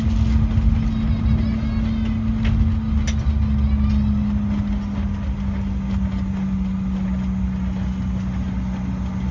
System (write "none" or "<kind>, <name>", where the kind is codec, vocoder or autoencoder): none